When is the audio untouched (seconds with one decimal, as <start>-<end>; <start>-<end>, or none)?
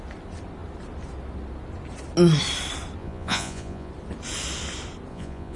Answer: 0.0-3.0; 3.9-5.1